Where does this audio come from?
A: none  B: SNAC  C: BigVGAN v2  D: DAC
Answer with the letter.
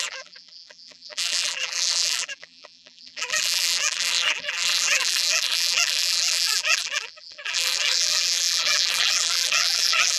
C